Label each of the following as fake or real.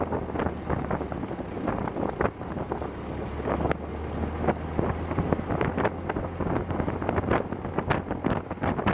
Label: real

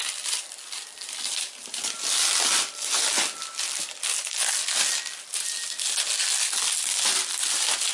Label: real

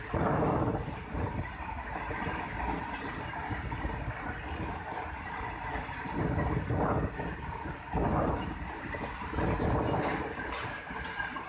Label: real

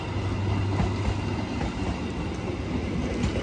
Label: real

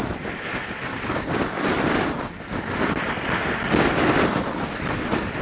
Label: real